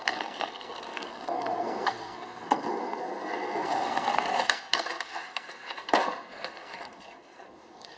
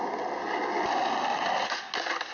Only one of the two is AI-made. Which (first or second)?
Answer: first